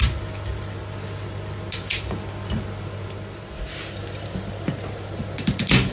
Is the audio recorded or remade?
recorded